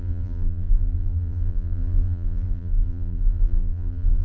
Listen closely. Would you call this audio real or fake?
fake